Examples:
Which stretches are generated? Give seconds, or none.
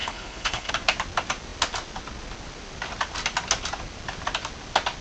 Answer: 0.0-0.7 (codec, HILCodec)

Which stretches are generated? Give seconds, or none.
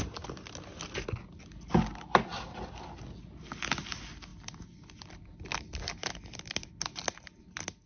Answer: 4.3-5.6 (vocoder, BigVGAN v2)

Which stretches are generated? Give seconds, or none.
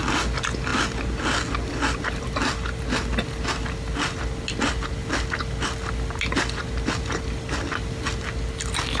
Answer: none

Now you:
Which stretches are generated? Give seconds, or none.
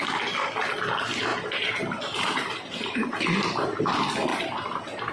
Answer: 1.3-3.8 (vocoder, BigVGAN v2); 4.3-5.1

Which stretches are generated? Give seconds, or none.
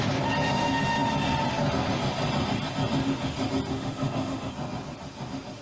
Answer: 3.7-4.5 (autoencoder, DAC-VAE)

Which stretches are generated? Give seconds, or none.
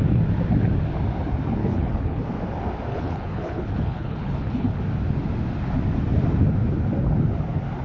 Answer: 1.6-2.2 (codec, HILCodec); 2.9-4.8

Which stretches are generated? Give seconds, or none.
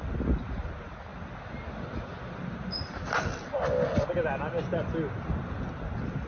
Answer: none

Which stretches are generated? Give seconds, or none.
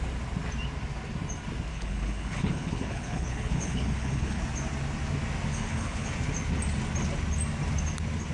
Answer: 1.7-4.4 (codec, HILCodec); 5.5-6.1